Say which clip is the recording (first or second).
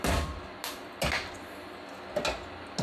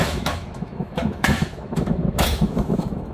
first